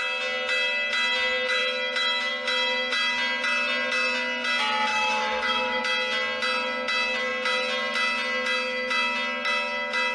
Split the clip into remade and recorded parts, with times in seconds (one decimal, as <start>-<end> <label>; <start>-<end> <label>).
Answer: 0.0-4.9 recorded; 4.9-5.8 remade; 5.8-10.1 recorded